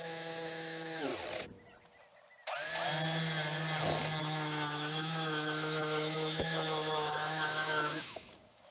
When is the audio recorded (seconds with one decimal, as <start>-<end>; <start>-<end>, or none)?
1.1-4.2